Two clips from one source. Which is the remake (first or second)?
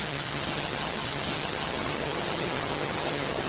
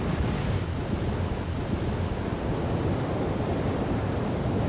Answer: first